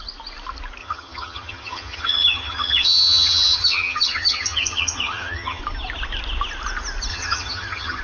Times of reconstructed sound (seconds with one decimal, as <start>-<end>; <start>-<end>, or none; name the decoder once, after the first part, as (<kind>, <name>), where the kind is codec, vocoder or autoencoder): 0.8-5.6 (vocoder, HiFi-GAN); 7.1-8.0